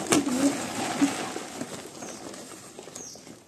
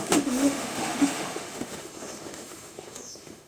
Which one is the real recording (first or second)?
first